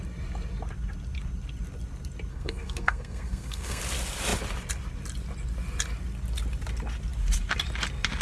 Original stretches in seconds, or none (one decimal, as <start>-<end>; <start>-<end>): 0.0-2.3; 3.8-8.2